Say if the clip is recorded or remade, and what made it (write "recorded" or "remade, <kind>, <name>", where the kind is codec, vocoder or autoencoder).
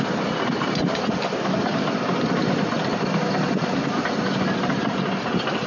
recorded